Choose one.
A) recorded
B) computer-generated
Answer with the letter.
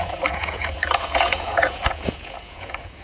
B